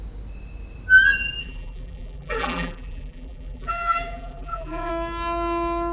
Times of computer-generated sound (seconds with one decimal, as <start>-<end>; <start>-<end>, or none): 1.4-4.9

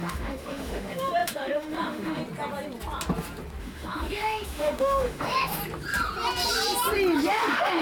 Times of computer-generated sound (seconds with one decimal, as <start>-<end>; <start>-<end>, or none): 0.0-2.2; 3.6-5.6; 7.3-7.8

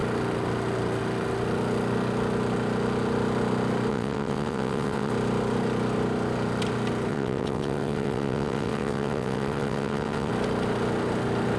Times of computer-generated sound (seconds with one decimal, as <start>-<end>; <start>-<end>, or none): 3.9-5.1; 7.1-10.3